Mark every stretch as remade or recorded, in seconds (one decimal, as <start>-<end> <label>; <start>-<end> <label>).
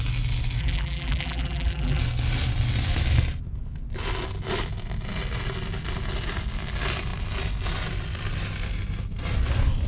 0.0-0.6 recorded; 0.6-2.0 remade; 2.0-9.9 recorded